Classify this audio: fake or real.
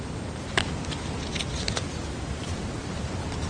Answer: real